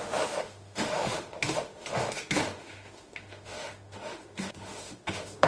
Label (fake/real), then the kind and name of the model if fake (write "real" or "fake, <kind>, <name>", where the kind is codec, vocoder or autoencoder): fake, autoencoder, DAC-VAE